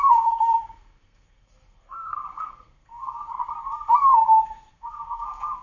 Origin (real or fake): fake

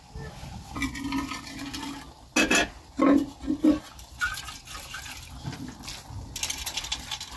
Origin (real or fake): real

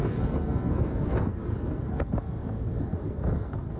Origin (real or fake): fake